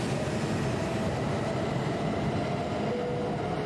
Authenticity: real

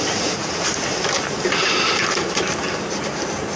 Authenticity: fake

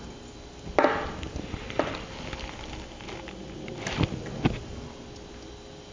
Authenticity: real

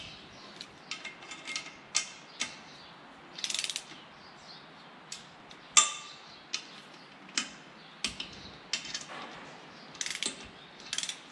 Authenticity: real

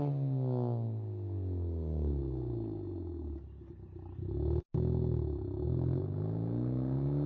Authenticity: real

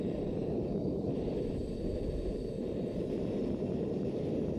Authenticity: fake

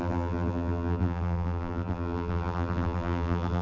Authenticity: fake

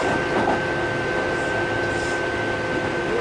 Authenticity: real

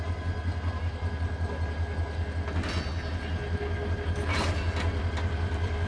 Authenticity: real